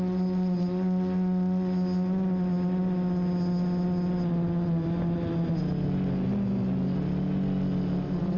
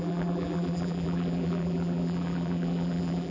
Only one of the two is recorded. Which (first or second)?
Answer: first